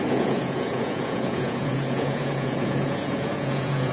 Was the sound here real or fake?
fake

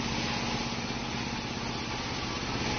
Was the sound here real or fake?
real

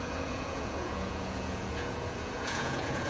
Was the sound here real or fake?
fake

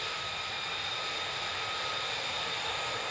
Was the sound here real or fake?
real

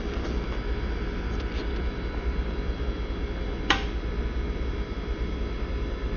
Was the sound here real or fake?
real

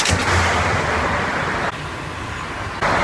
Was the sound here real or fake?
real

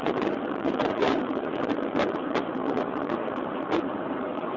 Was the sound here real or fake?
fake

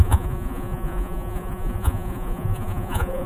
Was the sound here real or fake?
fake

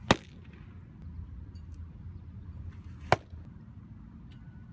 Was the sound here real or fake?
real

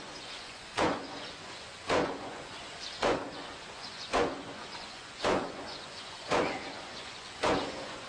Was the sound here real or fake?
fake